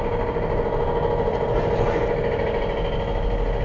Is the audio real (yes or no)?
yes